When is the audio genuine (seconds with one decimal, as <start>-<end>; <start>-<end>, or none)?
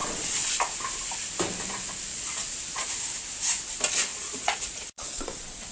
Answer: 0.5-2.1; 2.9-4.1